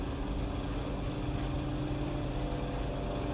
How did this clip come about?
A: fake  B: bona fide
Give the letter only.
B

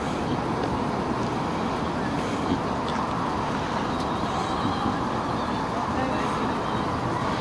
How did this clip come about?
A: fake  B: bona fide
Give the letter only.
B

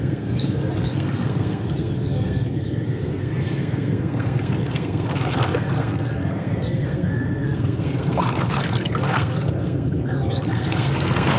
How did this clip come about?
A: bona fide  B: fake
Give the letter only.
B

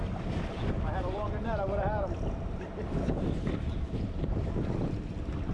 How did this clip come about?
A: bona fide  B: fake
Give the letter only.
A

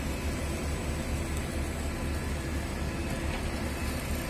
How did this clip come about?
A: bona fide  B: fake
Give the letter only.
A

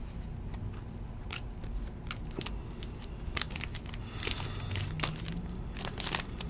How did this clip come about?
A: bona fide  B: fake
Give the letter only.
A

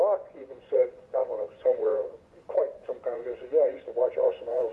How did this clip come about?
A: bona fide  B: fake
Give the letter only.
B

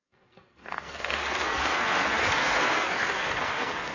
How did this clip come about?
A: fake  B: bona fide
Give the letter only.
A